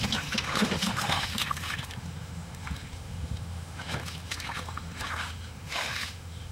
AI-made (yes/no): yes